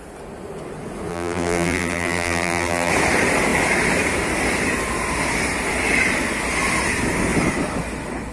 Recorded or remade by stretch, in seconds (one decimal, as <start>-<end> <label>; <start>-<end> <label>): 0.0-1.1 recorded; 1.1-2.9 remade; 2.9-8.3 recorded